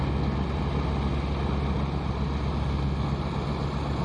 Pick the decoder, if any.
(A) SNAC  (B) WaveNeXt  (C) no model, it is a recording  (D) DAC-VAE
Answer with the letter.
C